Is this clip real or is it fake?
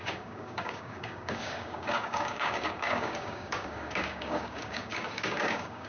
fake